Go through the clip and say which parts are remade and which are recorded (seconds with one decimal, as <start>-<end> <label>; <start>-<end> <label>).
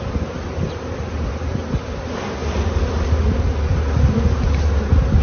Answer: 0.0-5.2 recorded